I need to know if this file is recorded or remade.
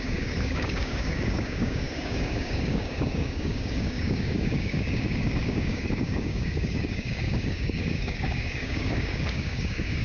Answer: remade